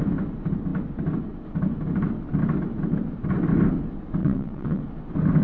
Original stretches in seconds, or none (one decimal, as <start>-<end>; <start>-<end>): 0.0-4.2; 4.8-5.4